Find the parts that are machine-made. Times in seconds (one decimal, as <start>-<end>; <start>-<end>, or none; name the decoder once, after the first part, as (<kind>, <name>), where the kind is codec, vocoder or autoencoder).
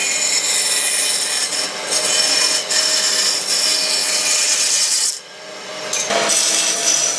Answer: 4.0-5.1 (vocoder, WaveNeXt)